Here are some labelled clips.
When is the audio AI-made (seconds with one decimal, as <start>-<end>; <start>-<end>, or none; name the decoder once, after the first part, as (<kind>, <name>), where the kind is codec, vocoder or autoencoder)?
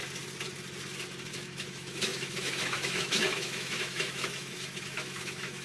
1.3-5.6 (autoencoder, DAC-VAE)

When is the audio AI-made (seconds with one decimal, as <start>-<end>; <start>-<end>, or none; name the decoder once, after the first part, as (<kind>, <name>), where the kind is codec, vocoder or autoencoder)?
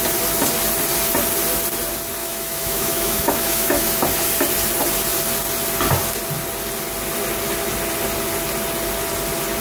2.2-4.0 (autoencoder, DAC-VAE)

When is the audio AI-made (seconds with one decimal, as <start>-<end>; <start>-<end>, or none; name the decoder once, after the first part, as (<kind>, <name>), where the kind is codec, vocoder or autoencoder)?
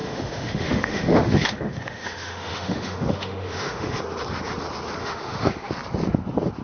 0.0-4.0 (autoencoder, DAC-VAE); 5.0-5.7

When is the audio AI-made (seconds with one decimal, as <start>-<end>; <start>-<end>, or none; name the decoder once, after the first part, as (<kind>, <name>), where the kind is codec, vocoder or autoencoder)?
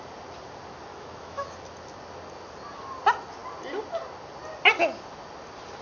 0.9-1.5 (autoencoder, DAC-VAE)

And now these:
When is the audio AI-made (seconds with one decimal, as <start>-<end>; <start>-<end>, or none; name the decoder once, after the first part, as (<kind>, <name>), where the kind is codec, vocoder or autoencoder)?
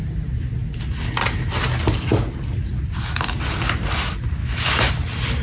4.4-4.9 (autoencoder, DAC-VAE)